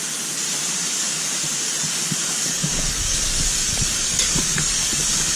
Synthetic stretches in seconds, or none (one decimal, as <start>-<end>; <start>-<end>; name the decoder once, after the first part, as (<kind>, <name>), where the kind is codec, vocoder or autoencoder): 0.8-1.3 (codec, DAC); 1.9-5.4